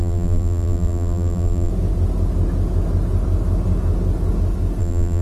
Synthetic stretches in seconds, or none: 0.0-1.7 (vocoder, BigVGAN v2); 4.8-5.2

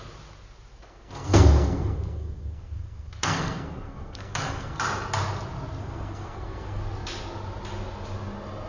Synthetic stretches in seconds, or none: 0.7-4.8 (codec, SNAC); 5.8-6.8

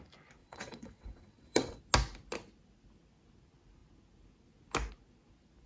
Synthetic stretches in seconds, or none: 0.4-1.8 (vocoder, WaveNeXt)